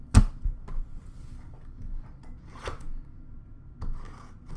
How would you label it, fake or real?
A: real